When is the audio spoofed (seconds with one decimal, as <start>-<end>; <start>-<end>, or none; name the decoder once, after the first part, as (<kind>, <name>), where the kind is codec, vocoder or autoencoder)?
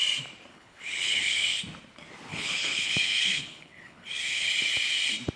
0.5-1.6 (codec, HILCodec); 2.3-4.5